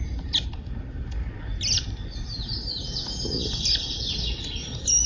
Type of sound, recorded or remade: recorded